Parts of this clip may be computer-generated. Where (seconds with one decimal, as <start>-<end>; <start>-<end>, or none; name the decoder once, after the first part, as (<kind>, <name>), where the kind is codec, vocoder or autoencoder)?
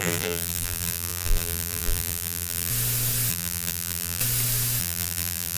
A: 0.0-2.7 (vocoder, BigVGAN v2); 3.3-4.2; 4.8-5.6